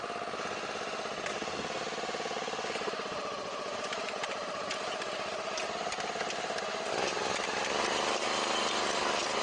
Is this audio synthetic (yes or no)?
no